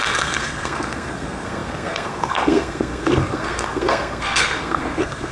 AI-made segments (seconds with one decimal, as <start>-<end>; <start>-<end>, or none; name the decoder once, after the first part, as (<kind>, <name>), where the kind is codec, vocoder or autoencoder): 0.0-5.3 (codec, SNAC)